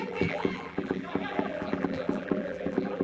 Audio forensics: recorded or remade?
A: remade